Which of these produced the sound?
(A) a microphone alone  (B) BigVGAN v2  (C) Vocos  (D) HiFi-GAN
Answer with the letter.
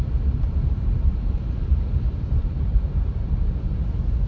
B